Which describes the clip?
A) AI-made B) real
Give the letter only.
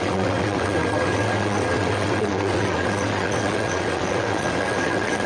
A